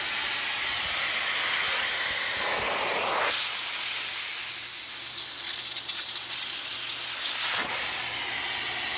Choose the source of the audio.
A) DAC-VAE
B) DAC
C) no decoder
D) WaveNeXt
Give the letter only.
C